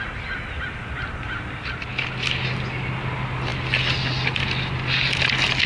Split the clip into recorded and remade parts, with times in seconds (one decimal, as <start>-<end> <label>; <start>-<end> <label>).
0.0-5.7 recorded